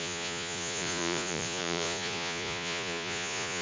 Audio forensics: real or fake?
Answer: fake